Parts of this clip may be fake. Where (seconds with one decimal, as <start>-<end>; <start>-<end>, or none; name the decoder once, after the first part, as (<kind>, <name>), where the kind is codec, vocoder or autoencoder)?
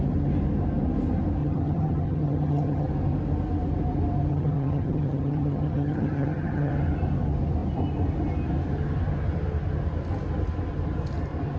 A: 1.4-2.9 (vocoder, HiFi-GAN); 4.3-6.7